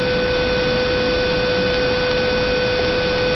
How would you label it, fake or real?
real